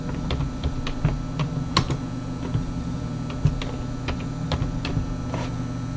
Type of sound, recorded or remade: recorded